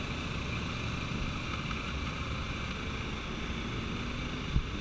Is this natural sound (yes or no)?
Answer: yes